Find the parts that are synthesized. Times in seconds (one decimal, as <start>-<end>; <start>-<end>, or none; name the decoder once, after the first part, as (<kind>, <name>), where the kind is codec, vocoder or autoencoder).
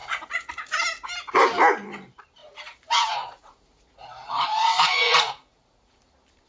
0.0-0.5 (vocoder, Vocos); 2.4-6.0